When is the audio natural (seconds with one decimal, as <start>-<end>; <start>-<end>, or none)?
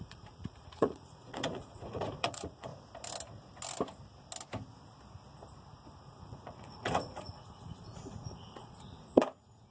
2.7-6.0